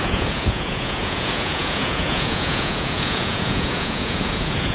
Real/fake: fake